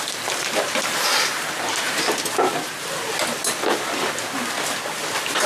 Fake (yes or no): no